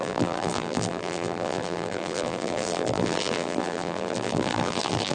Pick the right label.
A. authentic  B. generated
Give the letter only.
B